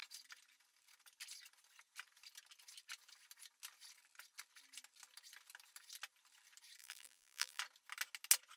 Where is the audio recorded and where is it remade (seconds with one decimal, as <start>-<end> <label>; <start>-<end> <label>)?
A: 0.0-6.8 recorded; 6.8-7.6 remade; 7.6-8.6 recorded